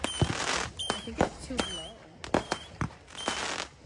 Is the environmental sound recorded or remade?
recorded